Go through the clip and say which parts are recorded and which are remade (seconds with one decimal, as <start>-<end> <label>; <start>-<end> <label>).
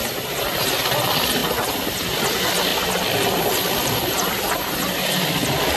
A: 0.0-1.4 recorded; 1.4-2.2 remade; 2.2-2.7 recorded; 2.7-5.8 remade